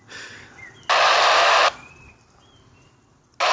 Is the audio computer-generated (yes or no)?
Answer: no